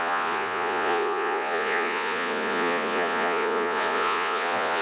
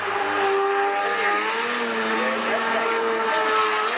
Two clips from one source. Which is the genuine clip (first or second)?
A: second